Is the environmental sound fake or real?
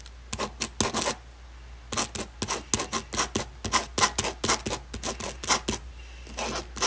real